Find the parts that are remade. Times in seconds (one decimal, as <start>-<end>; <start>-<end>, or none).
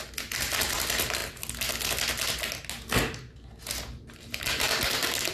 none